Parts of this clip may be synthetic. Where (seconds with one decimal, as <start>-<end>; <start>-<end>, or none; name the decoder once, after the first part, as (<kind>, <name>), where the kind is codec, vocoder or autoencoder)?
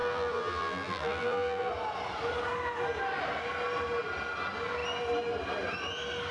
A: 0.0-1.7 (vocoder, BigVGAN v2)